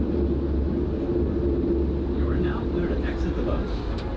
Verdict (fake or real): real